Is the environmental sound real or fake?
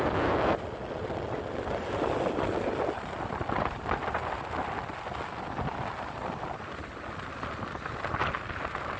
real